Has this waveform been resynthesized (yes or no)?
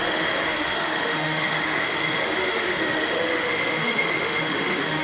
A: yes